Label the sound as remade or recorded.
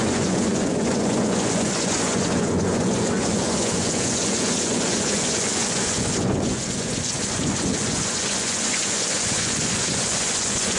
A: remade